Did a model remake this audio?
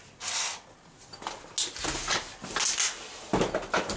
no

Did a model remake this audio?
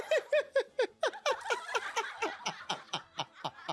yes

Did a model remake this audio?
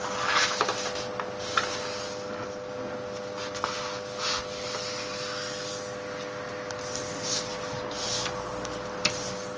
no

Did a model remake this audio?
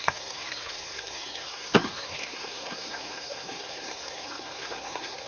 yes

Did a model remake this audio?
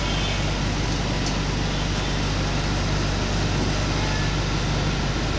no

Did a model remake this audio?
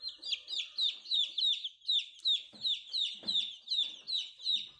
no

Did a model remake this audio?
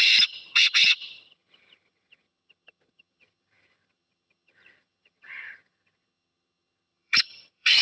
yes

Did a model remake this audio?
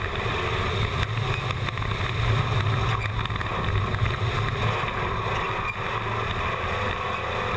no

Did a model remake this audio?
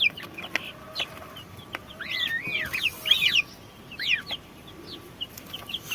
no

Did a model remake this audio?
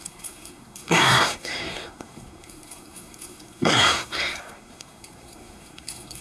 yes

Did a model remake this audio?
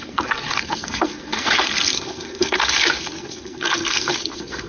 yes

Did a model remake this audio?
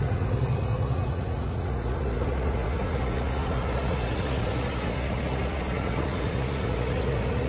yes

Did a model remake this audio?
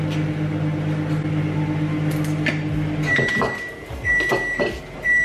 no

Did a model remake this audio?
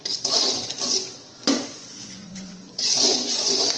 yes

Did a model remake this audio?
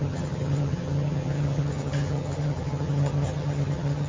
yes